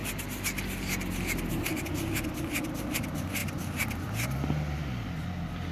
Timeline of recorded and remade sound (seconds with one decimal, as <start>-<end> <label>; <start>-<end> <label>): 0.0-1.5 remade; 1.5-3.4 recorded; 3.4-4.8 remade; 4.8-5.7 recorded